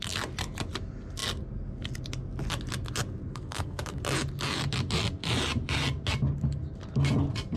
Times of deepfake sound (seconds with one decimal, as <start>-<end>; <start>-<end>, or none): 3.3-4.0